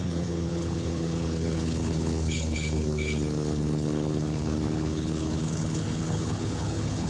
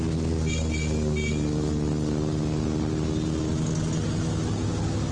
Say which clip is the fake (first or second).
first